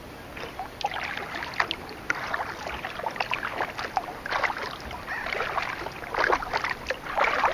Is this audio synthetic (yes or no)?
no